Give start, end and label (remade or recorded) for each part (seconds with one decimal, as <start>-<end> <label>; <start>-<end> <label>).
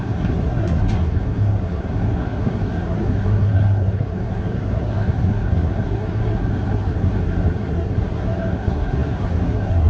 0.0-9.9 remade